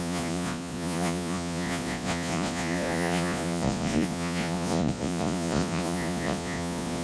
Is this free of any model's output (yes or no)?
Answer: no